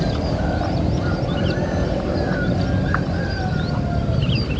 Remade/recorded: remade